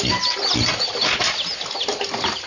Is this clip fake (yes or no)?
no